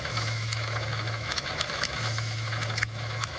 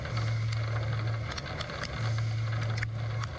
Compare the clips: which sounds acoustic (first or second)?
second